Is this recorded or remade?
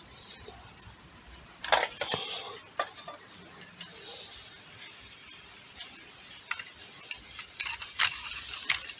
recorded